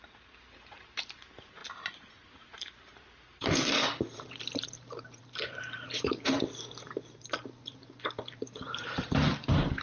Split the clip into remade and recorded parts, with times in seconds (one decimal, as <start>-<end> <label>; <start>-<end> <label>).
0.0-1.6 remade; 1.6-2.1 recorded; 2.1-9.8 remade